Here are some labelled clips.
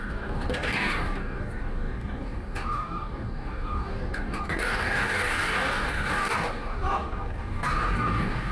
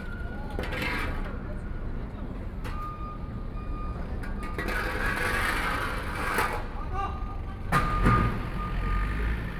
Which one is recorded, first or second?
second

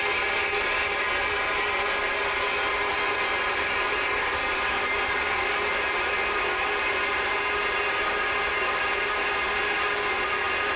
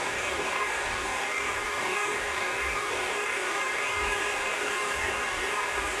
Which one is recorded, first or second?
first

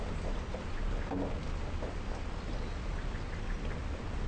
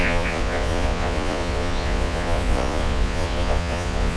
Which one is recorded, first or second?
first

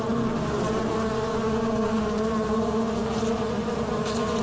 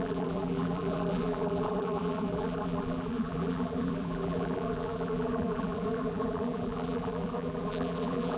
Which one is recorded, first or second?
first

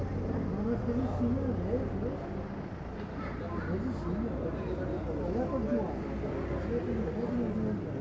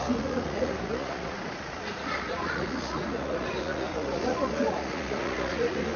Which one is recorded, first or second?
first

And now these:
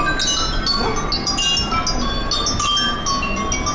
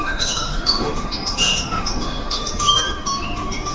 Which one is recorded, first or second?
first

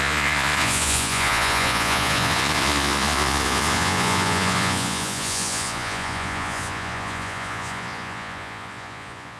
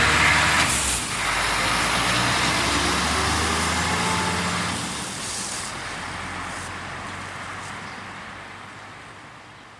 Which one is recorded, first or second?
second